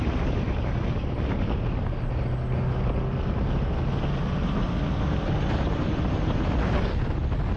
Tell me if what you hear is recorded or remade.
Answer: recorded